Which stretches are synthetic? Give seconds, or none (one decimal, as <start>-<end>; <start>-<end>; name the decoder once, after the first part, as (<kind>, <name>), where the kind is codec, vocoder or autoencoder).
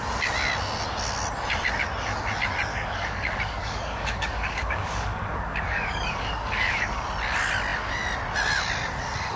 2.7-7.0 (codec, DAC)